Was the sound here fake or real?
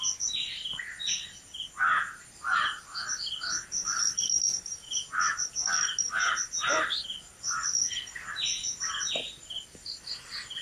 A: real